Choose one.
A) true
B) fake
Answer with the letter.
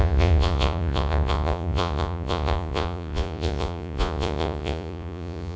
B